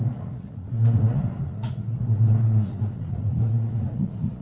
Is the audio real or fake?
fake